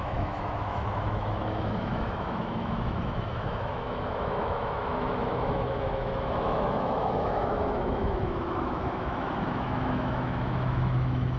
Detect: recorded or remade remade